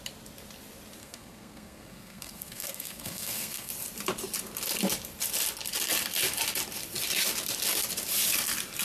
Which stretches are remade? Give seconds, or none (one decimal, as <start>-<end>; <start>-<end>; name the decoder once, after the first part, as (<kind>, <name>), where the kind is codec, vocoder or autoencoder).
1.0-3.7 (codec, SNAC)